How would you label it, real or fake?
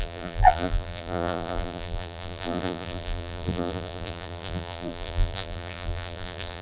fake